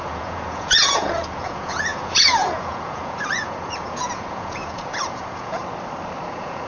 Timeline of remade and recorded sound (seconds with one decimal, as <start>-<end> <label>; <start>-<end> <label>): 0.0-5.6 remade; 5.6-6.3 recorded; 6.3-6.7 remade